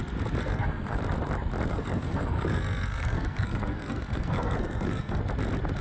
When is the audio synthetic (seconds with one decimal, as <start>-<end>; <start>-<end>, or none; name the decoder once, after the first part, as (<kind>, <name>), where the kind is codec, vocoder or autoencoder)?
0.4-1.0 (codec, SNAC); 1.7-5.2